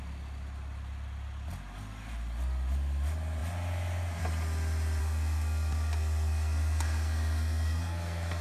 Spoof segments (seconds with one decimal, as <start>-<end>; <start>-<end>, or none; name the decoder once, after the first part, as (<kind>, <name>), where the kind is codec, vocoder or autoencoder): 5.0-8.4 (codec, SNAC)

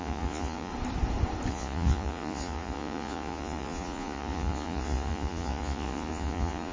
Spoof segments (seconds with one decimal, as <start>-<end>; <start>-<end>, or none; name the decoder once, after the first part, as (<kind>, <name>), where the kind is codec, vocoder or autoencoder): 0.0-0.7 (vocoder, Vocos); 1.5-6.7

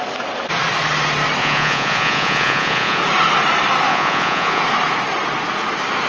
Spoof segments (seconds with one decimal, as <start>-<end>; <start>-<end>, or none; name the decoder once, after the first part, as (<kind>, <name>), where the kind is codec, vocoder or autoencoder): 1.4-3.0 (vocoder, Vocos); 3.9-4.6

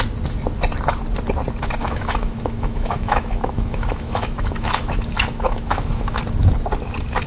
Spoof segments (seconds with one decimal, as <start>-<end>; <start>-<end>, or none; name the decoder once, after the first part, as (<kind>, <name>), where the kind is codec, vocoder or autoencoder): 1.8-6.2 (autoencoder, DAC-VAE)

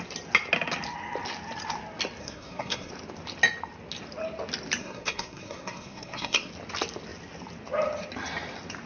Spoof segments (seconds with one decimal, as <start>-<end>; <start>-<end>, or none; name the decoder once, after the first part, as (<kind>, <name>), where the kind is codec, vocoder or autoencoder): 2.2-2.9 (codec, SNAC); 4.8-6.5

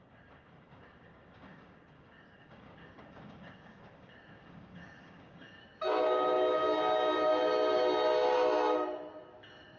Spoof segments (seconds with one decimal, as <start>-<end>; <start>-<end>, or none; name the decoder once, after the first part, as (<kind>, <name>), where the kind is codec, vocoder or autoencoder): 0.0-5.6 (codec, DAC)